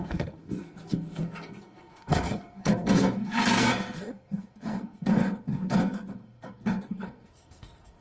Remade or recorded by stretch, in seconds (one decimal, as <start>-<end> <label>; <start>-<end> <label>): 0.0-8.0 remade